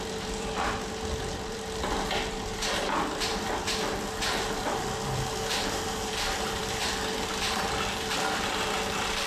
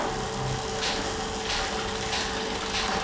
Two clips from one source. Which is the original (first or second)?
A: second